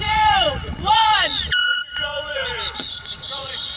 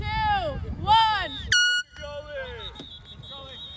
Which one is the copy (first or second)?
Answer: first